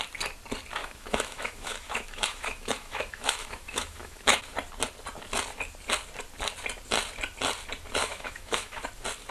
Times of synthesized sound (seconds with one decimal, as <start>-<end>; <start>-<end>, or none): 0.8-4.4; 8.0-8.9